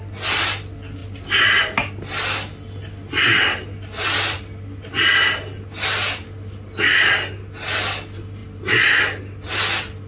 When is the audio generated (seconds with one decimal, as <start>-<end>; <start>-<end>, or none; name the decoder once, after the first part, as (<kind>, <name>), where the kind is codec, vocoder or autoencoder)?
none